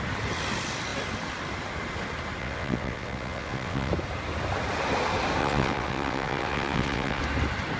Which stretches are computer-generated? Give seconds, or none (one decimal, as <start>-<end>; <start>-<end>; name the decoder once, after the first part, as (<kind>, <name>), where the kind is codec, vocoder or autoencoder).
2.4-3.9 (vocoder, WaveNeXt); 5.4-7.2